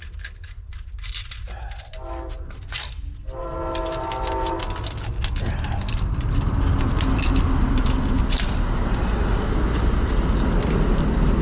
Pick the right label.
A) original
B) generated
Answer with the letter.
A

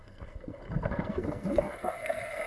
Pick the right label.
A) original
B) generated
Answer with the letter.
B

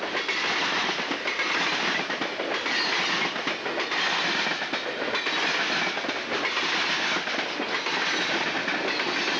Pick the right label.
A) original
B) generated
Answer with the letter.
A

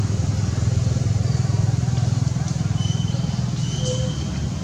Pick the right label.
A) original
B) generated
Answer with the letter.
A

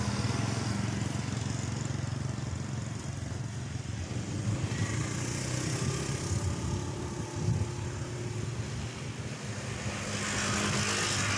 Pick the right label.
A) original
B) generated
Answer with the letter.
A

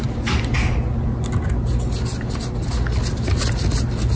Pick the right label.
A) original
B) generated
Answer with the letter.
A